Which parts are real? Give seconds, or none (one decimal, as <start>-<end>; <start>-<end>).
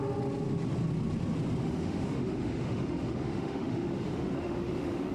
0.0-1.6